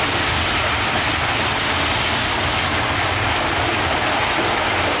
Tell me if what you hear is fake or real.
real